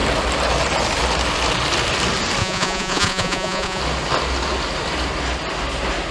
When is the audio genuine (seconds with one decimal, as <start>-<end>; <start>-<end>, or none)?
0.0-2.4; 3.8-6.1